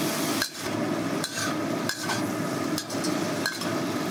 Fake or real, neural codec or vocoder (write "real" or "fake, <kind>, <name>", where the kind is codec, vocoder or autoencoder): real